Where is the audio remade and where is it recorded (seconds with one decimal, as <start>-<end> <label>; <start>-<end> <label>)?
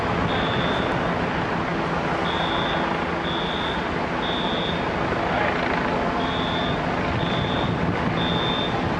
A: 0.0-9.0 recorded